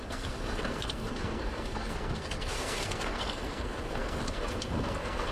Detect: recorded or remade remade